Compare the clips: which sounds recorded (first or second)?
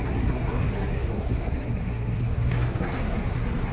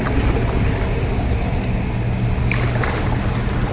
second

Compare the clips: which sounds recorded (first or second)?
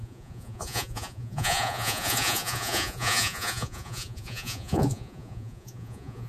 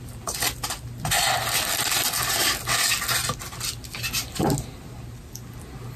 second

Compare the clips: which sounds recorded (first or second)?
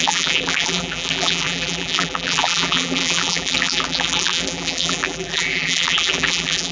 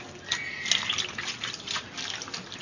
second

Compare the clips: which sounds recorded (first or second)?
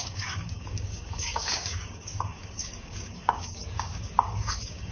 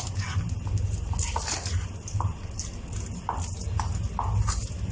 second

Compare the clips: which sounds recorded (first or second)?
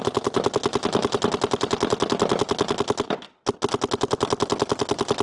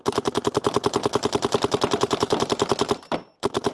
first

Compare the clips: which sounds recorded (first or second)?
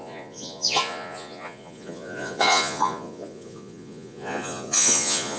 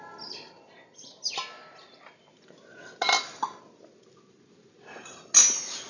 second